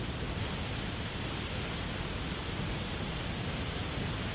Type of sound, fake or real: real